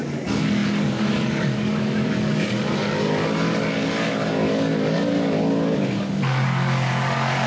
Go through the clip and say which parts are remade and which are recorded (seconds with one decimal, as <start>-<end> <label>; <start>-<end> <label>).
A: 0.0-7.5 remade